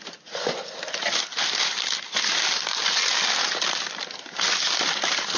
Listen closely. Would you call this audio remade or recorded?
recorded